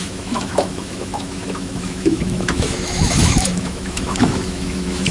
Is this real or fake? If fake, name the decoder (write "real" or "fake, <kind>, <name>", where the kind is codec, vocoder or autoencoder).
fake, autoencoder, DAC-VAE